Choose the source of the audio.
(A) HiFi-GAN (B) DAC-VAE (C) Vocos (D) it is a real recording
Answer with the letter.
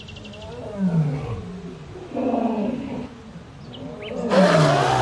D